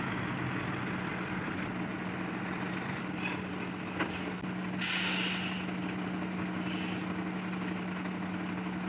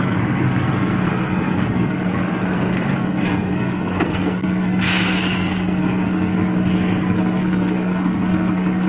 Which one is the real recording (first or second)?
first